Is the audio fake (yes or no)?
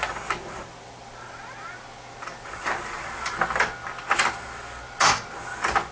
no